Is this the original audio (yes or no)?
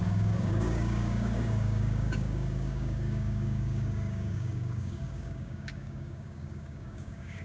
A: no